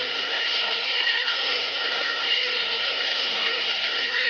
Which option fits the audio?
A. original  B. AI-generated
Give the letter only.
B